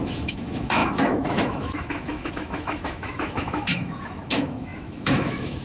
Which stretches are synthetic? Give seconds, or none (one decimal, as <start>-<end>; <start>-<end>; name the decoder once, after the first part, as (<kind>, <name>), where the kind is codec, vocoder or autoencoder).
0.0-5.6 (autoencoder, DAC-VAE)